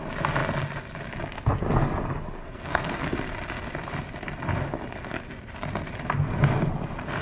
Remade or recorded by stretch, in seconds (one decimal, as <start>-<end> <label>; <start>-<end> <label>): 0.0-2.4 recorded; 2.4-3.0 remade; 3.0-7.2 recorded

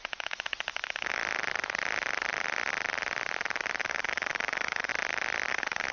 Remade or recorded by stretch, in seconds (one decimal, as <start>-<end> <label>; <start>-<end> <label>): 0.0-1.2 remade; 1.2-3.8 recorded; 3.8-4.9 remade; 4.9-5.5 recorded; 5.5-5.9 remade

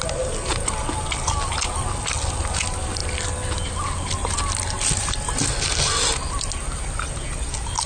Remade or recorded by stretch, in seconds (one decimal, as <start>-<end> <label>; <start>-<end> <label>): 0.0-7.9 recorded

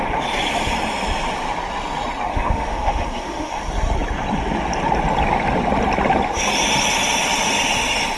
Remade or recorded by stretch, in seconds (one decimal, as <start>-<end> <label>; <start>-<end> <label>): 0.0-2.3 recorded; 2.3-3.6 remade; 3.6-8.2 recorded

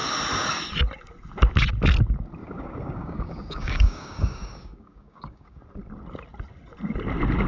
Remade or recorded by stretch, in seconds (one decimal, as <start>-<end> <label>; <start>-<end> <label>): 0.0-2.4 recorded; 2.4-5.6 remade; 5.6-7.5 recorded

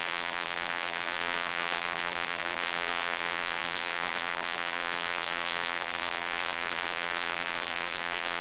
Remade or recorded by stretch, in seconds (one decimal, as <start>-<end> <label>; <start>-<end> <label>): 0.0-8.4 remade